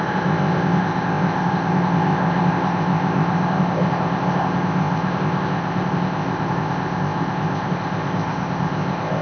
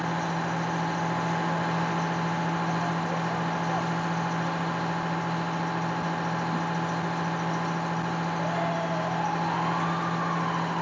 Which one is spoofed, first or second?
first